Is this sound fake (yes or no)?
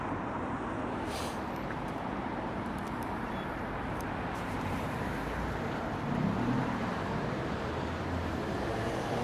yes